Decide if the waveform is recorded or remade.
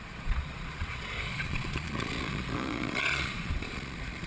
remade